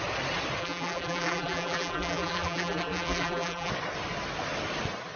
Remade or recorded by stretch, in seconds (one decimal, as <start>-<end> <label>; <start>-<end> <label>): 0.0-0.6 recorded; 0.6-3.7 remade; 3.7-5.2 recorded